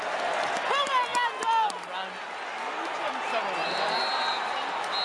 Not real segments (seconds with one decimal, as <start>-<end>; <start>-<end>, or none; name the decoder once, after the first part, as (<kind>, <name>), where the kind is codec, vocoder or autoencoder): none